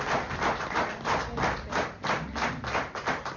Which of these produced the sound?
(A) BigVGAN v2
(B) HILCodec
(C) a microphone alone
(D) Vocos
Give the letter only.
C